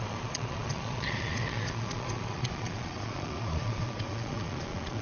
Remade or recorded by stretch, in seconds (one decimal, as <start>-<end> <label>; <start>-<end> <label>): 0.0-5.0 remade